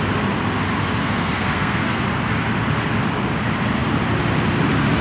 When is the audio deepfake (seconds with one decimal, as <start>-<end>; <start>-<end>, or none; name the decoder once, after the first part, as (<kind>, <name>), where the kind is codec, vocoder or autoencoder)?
1.0-2.0 (codec, SNAC)